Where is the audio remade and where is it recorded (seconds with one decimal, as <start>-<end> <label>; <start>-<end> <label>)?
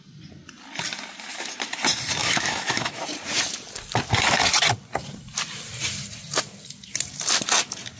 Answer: 0.0-2.2 recorded; 2.2-3.0 remade; 3.0-8.0 recorded